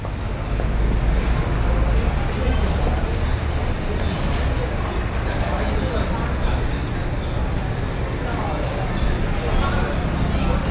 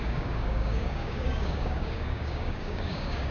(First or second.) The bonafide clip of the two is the first